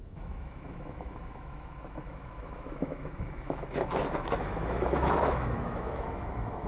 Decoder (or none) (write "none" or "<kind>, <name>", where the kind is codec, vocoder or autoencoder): autoencoder, DAC-VAE